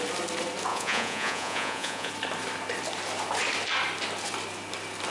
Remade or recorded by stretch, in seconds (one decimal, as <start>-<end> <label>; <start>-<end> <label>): 0.0-0.7 recorded; 0.7-2.1 remade; 2.1-5.1 recorded